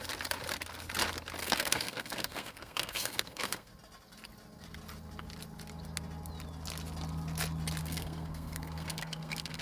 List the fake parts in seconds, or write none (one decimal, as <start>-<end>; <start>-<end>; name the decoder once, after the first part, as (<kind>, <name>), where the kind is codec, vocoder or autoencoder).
1.4-3.7 (codec, SNAC); 7.8-9.6